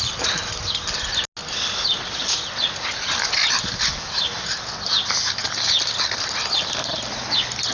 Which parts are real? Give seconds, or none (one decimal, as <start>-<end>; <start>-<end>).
0.0-7.7